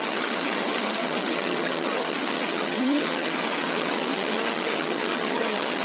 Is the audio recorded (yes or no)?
no